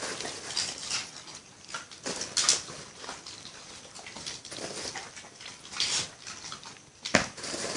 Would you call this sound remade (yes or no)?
no